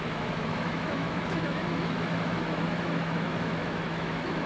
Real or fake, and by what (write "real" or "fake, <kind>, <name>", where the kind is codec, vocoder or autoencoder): fake, autoencoder, DAC-VAE